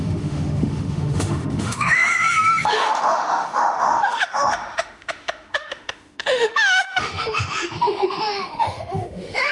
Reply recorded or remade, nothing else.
remade